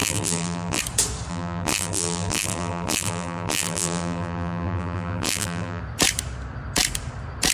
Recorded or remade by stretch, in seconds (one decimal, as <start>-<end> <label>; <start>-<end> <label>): 0.0-0.8 remade; 0.8-1.3 recorded; 1.3-5.8 remade; 5.8-7.5 recorded